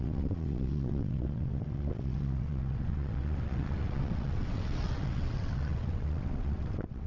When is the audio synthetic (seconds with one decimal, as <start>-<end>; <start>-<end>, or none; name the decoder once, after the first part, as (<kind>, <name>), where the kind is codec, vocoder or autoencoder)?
0.0-7.1 (vocoder, WaveNeXt)